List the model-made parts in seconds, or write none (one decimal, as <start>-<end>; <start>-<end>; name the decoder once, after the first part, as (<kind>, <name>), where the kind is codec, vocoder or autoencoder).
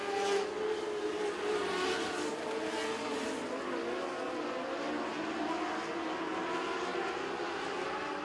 none